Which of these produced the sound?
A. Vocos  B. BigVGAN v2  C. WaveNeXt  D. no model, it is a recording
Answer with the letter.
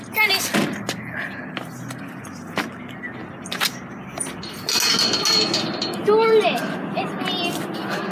D